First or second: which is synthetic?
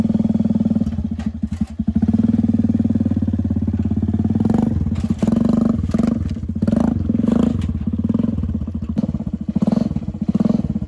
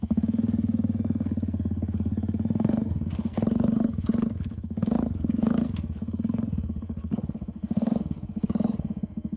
second